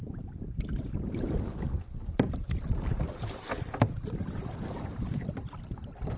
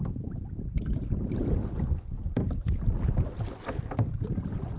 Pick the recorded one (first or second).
second